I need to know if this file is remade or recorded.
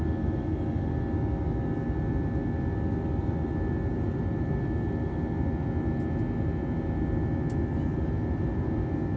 recorded